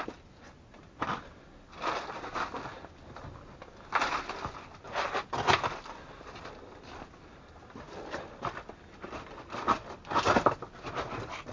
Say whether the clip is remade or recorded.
recorded